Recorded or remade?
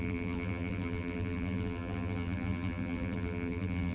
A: remade